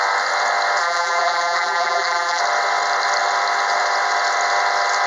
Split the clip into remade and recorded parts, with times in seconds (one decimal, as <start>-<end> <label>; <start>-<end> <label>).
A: 0.0-0.8 recorded; 0.8-2.4 remade; 2.4-5.1 recorded